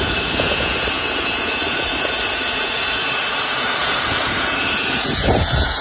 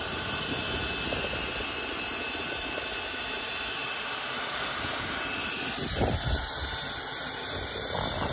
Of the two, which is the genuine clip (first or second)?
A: second